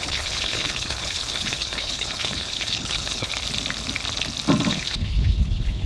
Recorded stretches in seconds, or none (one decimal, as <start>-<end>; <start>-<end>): 3.3-4.7